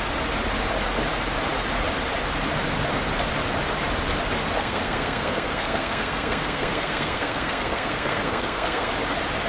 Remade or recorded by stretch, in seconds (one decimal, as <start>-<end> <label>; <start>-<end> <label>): 0.0-4.6 recorded; 4.6-8.9 remade; 8.9-9.5 recorded